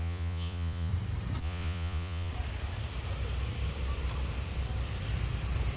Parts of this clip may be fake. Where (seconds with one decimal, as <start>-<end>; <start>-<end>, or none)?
0.0-0.9; 1.4-2.3